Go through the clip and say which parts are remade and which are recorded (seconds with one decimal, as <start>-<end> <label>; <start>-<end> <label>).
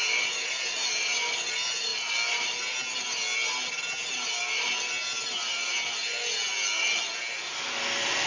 0.0-8.3 recorded